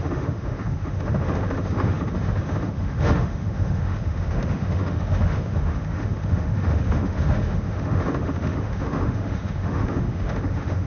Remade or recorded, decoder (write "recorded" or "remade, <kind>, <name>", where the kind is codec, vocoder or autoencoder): remade, autoencoder, DAC-VAE